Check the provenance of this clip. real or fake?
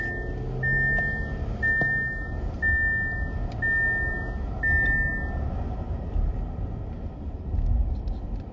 real